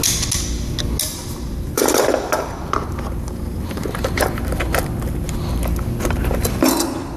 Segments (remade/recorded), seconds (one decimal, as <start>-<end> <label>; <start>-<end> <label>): 0.0-1.1 recorded; 1.1-4.3 remade; 4.3-7.2 recorded